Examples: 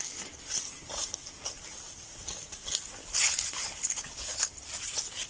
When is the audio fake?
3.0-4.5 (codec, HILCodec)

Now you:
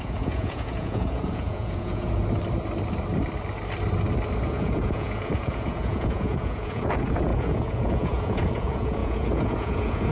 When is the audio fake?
0.0-2.2 (vocoder, Vocos); 4.4-10.1

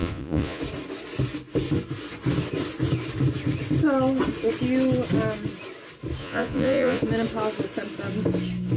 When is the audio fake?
0.0-0.6 (vocoder, Vocos); 6.2-7.0

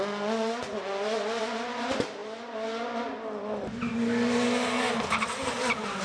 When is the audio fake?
none

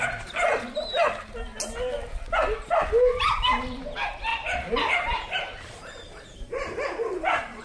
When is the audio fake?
4.3-7.6 (vocoder, BigVGAN v2)

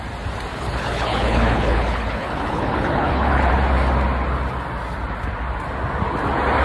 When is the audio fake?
0.5-3.5 (codec, HILCodec)